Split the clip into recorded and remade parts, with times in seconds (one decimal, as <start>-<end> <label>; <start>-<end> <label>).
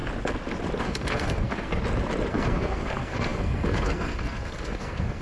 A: 0.0-0.8 recorded; 0.8-1.7 remade; 1.7-2.3 recorded; 2.3-5.2 remade